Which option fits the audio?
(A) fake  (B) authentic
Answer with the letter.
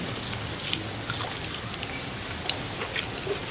B